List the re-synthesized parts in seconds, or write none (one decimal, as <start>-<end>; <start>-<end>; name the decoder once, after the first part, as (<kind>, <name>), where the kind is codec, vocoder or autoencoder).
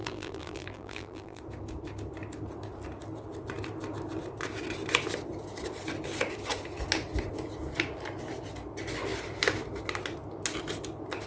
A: 0.0-1.4 (vocoder, BigVGAN v2)